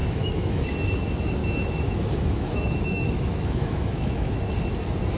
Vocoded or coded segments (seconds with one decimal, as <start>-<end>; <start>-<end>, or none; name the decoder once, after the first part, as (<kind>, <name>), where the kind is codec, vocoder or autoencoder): 0.0-0.6 (autoencoder, DAC-VAE); 1.4-4.5